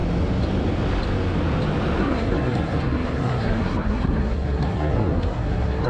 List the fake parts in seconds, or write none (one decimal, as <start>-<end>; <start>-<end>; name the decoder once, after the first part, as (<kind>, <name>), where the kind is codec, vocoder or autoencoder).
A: 2.0-5.9 (codec, SNAC)